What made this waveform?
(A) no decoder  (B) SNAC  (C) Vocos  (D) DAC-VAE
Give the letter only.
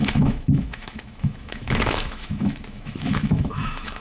D